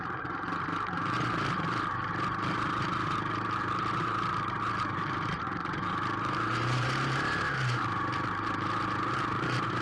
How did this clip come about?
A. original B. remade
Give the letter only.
B